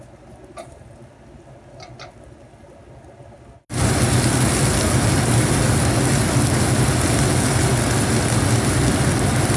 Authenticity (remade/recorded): recorded